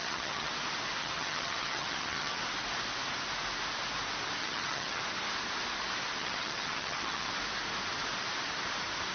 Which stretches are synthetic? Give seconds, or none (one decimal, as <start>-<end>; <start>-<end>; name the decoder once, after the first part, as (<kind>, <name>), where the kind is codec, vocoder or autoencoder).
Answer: 0.0-0.5 (vocoder, HiFi-GAN); 1.0-2.4; 4.4-5.0; 6.2-7.3